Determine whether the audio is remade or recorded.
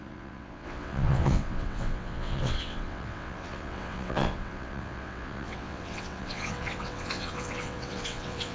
remade